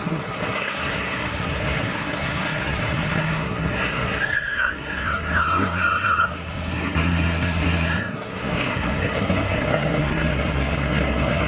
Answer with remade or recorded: remade